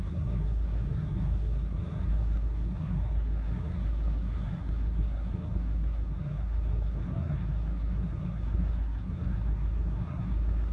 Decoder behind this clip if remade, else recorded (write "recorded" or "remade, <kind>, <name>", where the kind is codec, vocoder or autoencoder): remade, codec, SNAC